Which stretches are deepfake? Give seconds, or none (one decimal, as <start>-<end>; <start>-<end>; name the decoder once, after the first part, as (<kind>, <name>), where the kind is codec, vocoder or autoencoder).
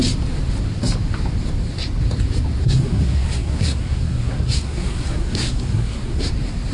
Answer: 2.6-6.3 (codec, SNAC)